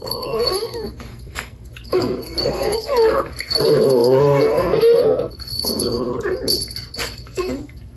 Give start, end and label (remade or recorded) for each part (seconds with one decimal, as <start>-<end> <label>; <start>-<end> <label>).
0.0-6.1 remade; 6.1-7.0 recorded; 7.0-8.0 remade